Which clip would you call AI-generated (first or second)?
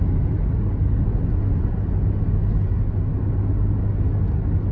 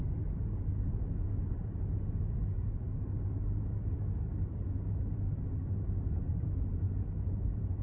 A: second